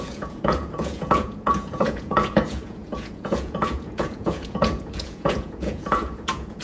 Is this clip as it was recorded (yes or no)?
no